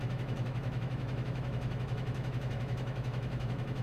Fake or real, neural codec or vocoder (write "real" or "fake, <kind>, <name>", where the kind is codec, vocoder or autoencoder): fake, autoencoder, DAC-VAE